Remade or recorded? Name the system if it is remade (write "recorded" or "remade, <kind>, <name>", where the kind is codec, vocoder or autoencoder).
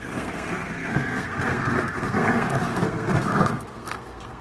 remade, codec, SNAC